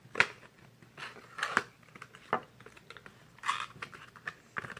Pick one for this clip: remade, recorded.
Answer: recorded